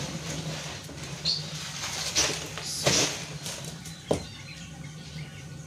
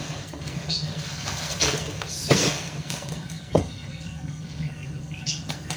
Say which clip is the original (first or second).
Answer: first